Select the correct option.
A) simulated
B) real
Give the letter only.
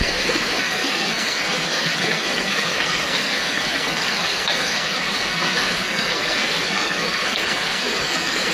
A